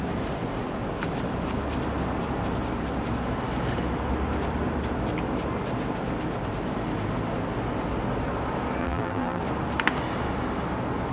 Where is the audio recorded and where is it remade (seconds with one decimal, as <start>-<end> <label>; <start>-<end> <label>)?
0.0-8.8 recorded; 8.8-9.4 remade; 9.4-11.1 recorded